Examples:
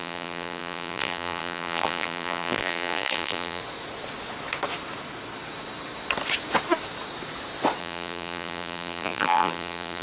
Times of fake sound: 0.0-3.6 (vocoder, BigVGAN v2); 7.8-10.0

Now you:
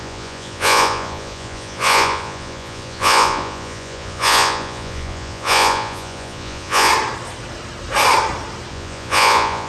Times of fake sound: 0.0-6.9 (vocoder, Vocos); 8.7-9.7